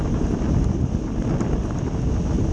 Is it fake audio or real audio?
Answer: real